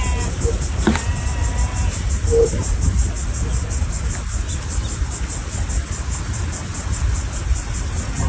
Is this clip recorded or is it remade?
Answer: recorded